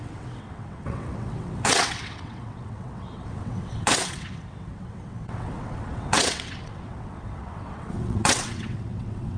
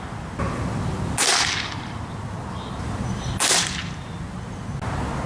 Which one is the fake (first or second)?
first